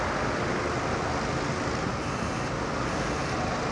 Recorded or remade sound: recorded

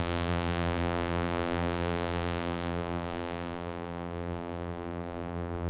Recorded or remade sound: remade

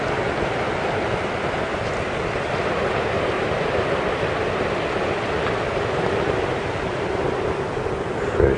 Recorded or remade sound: recorded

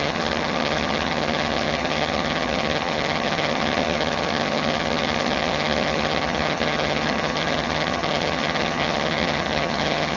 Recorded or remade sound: remade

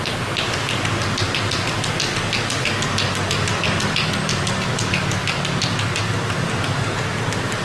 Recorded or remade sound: recorded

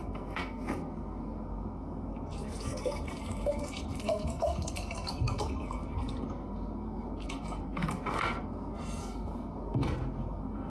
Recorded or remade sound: remade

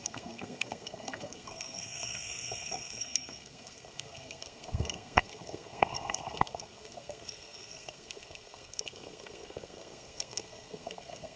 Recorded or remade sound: remade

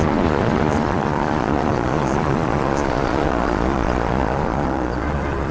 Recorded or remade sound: remade